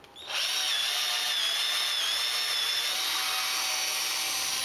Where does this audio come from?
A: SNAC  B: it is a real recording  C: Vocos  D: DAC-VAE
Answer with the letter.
B